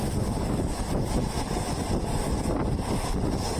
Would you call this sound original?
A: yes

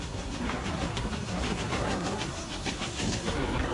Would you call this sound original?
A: no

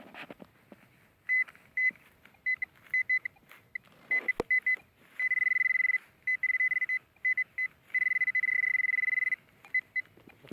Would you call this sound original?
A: yes